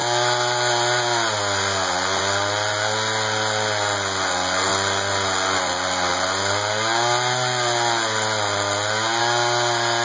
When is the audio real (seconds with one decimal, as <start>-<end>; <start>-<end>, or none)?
0.0-10.0